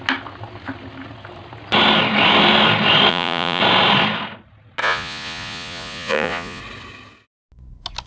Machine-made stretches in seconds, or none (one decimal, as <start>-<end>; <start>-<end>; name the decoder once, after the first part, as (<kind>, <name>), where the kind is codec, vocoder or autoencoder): 3.1-3.6 (vocoder, Vocos); 4.8-6.6